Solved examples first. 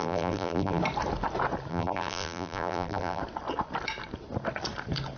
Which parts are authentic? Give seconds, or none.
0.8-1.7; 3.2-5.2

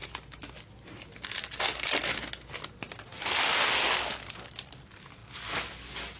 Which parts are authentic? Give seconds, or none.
0.0-6.2